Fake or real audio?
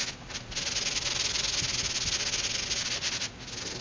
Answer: real